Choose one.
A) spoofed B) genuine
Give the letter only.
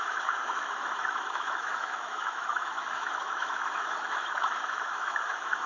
A